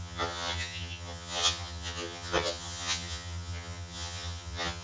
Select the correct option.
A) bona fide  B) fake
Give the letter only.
B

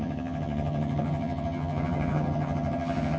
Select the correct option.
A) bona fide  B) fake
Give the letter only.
B